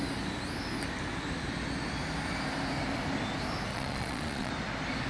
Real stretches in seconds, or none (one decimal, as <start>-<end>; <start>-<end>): 0.0-3.7; 4.5-5.1